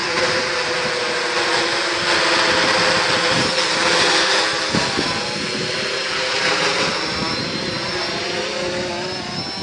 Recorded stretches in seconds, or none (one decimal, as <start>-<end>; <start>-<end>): 0.0-7.4; 8.9-9.6